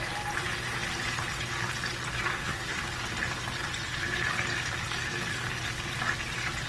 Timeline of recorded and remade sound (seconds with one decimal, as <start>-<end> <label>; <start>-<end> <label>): 0.0-2.3 recorded; 2.3-2.8 remade; 2.8-6.7 recorded